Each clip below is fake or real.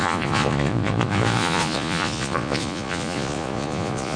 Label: fake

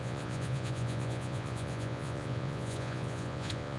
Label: fake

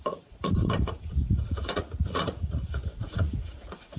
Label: fake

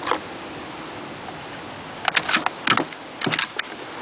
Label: real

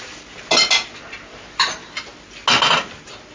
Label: real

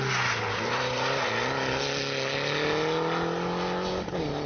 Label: real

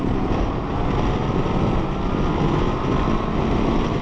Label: real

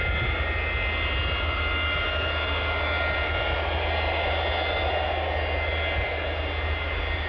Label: real